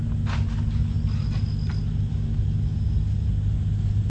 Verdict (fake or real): real